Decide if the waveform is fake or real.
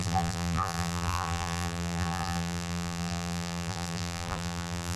fake